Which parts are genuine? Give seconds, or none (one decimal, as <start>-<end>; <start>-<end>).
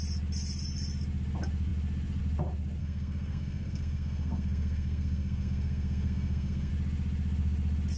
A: 0.0-2.8; 6.7-8.0